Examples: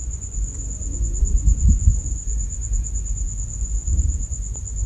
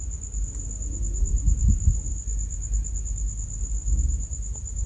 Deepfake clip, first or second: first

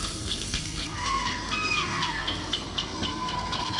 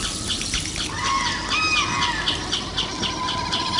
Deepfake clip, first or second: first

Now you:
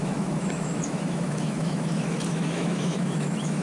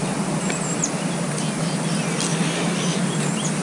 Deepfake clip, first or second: first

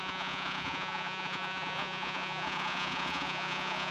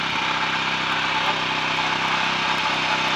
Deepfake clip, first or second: first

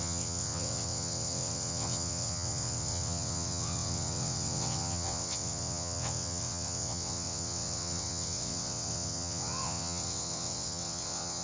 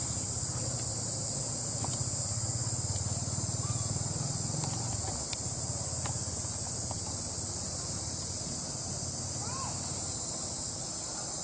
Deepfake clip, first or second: first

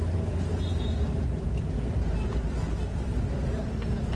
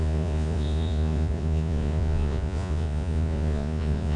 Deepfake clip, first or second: second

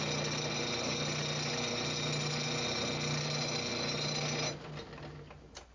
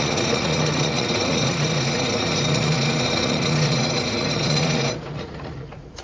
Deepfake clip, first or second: second